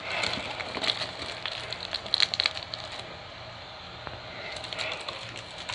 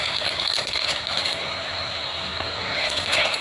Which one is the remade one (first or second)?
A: second